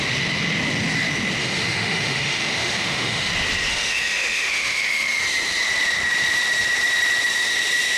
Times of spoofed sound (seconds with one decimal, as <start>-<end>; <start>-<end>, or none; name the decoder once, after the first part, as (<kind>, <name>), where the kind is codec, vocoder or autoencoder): 1.4-3.3 (autoencoder, DAC-VAE); 3.7-5.2